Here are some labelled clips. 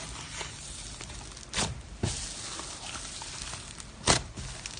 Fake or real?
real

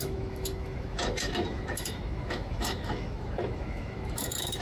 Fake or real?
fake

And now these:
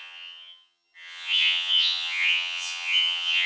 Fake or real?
fake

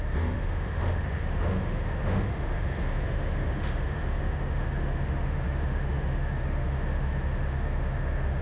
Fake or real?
fake